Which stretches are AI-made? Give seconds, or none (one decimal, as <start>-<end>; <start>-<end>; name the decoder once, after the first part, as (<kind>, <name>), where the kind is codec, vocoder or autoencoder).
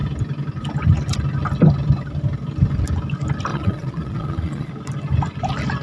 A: 3.5-4.7 (vocoder, Vocos)